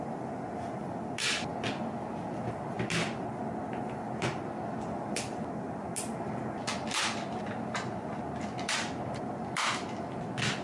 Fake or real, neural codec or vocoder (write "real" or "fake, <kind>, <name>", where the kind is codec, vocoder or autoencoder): real